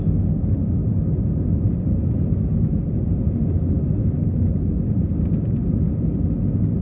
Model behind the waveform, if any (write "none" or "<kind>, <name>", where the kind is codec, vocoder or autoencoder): none